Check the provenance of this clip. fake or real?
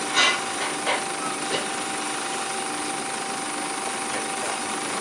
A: real